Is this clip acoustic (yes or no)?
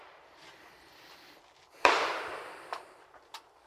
no